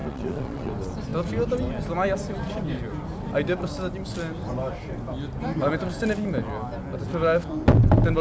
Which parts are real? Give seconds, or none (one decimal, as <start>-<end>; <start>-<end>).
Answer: 0.7-8.2